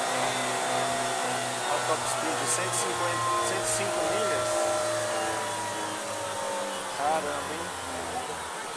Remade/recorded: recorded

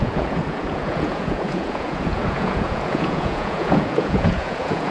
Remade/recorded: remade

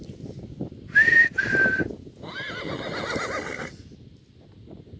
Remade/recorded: recorded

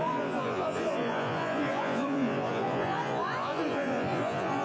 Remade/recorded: remade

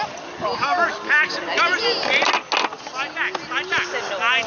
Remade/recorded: recorded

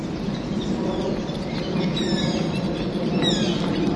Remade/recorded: recorded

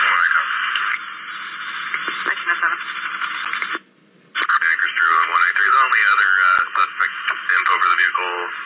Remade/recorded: recorded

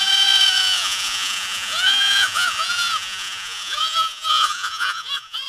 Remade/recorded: remade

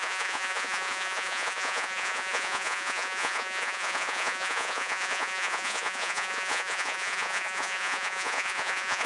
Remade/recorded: remade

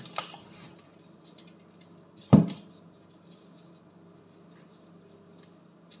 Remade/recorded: recorded